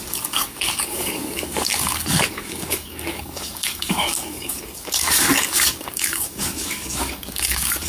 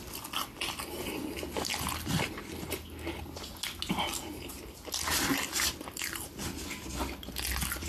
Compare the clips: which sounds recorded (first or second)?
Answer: second